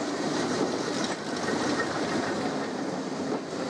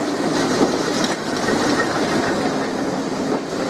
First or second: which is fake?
first